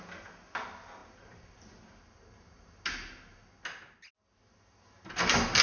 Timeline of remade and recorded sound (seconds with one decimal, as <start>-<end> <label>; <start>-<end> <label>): 0.0-5.6 recorded